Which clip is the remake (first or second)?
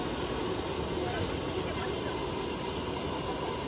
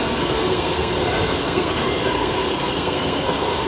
second